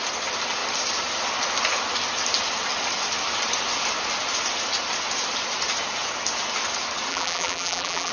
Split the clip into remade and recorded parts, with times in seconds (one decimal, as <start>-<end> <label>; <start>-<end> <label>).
0.0-7.1 recorded; 7.1-8.1 remade